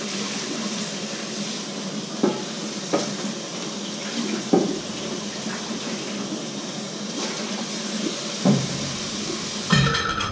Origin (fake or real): fake